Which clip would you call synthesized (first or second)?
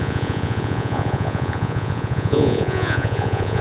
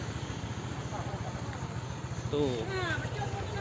first